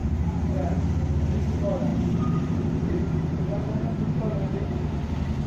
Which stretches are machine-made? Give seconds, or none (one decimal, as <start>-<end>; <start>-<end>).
0.0-0.8; 1.9-4.7